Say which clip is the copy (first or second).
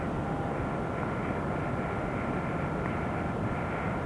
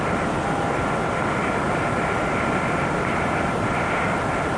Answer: second